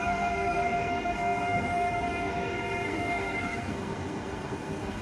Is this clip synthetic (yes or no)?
yes